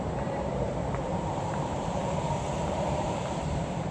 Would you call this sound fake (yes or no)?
yes